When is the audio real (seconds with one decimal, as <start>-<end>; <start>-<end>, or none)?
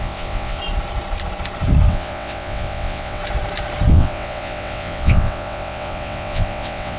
0.6-1.9; 3.2-3.9